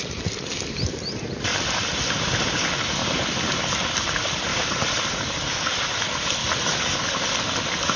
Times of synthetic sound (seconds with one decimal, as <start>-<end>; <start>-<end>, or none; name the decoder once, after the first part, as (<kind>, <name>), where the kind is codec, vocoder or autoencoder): 3.0-3.5 (vocoder, BigVGAN v2); 4.5-5.3